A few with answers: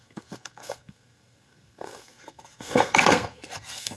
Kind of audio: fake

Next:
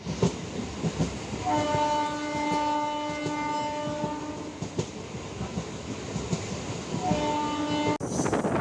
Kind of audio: real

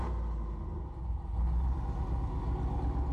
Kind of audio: real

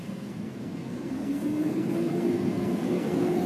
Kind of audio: fake